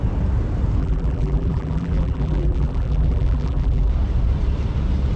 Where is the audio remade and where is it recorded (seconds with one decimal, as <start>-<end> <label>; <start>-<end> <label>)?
0.0-0.8 recorded; 0.8-3.9 remade; 3.9-5.2 recorded